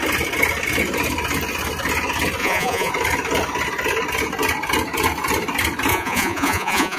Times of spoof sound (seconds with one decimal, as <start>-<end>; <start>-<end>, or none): 2.4-2.9; 5.9-7.0